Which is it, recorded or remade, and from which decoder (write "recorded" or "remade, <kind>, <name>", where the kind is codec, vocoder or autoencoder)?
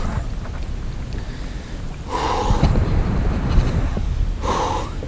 recorded